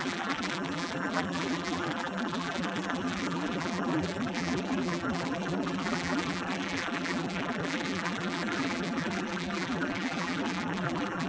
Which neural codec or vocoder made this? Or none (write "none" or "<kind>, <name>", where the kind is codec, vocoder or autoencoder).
vocoder, BigVGAN v2